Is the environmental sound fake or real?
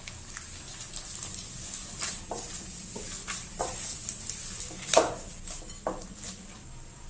real